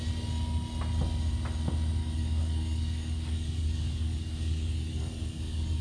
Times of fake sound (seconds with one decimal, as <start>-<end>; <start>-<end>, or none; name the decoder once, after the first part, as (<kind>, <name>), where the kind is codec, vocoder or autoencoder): 2.0-5.8 (codec, DAC)